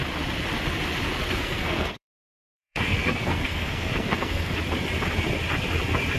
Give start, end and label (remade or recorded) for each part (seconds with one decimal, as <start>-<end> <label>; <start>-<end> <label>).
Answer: 0.0-1.3 recorded; 1.3-4.5 remade; 4.5-6.2 recorded